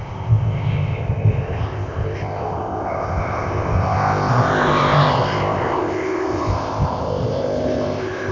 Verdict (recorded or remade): remade